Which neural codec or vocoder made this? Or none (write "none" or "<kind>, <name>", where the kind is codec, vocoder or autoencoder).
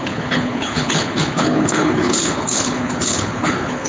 codec, HILCodec